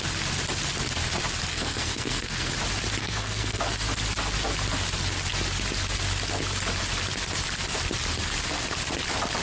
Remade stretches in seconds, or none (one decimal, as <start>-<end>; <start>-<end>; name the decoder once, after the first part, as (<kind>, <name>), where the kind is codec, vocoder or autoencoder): 1.5-2.5 (codec, SNAC); 3.0-3.6